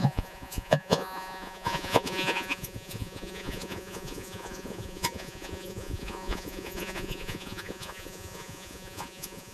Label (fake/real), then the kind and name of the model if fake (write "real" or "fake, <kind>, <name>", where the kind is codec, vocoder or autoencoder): fake, vocoder, Vocos